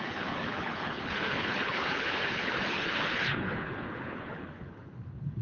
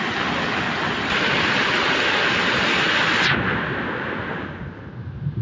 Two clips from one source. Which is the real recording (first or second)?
second